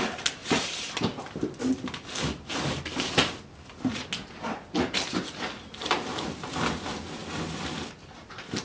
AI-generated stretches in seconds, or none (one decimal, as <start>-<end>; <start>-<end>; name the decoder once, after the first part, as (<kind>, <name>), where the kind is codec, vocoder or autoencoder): none